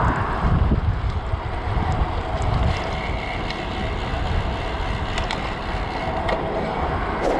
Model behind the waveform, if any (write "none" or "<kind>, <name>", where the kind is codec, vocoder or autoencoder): none